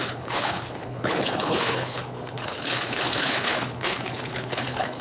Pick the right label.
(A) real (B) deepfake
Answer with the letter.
B